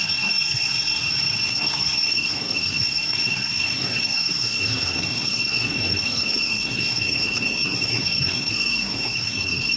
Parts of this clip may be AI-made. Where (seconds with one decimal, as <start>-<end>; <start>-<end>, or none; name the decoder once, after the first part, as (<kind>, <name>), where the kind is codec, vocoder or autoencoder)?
0.0-1.0 (codec, SNAC); 1.5-9.8